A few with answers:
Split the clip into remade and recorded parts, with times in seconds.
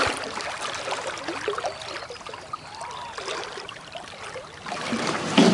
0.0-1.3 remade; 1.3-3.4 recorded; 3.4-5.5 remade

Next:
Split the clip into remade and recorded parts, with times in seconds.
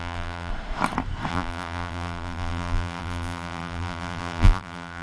0.0-0.5 remade; 0.5-1.3 recorded; 1.3-5.0 remade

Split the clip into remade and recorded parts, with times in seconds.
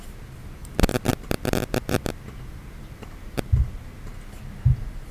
0.0-0.6 recorded; 0.6-3.7 remade; 3.7-5.1 recorded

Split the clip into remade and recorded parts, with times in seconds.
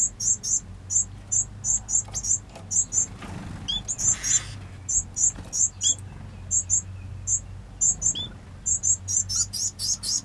0.0-10.2 recorded